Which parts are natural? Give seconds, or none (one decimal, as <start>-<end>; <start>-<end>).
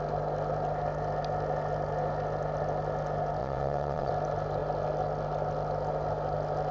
0.0-3.4; 4.1-6.7